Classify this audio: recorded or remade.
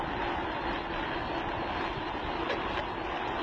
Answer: recorded